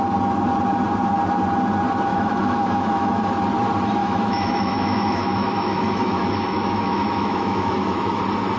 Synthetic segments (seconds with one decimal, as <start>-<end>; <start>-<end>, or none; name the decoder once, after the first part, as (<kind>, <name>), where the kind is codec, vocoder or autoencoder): 2.1-3.3 (autoencoder, DAC-VAE); 4.0-8.2